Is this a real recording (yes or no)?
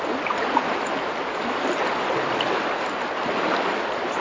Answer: yes